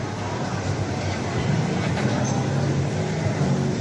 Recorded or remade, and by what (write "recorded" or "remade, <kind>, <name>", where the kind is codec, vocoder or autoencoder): recorded